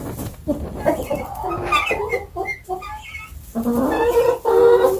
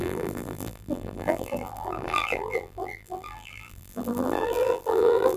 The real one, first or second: first